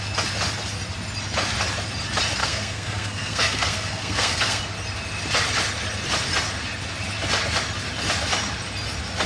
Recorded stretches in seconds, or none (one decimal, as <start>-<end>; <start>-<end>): 0.0-2.4; 4.6-9.3